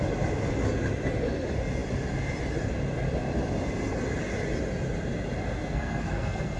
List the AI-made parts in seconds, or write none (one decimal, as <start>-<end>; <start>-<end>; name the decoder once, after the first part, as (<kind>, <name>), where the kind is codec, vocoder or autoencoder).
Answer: 5.6-6.6 (codec, SNAC)